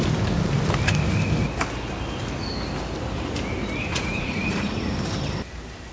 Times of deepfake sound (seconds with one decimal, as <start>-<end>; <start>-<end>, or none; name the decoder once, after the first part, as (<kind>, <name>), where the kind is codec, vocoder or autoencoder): 3.9-4.9 (vocoder, Vocos)